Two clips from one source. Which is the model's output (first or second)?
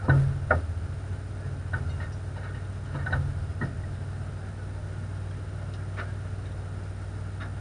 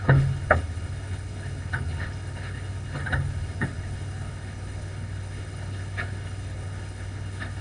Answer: second